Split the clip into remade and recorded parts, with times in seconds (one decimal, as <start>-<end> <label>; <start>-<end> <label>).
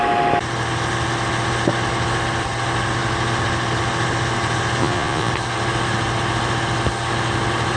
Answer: 0.0-4.8 recorded; 4.8-5.3 remade; 5.3-7.8 recorded